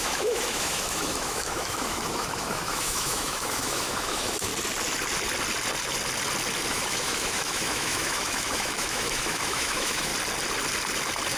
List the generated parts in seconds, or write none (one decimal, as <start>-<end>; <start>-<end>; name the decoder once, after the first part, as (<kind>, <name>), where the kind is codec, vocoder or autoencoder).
0.0-4.5 (autoencoder, DAC-VAE); 6.7-10.1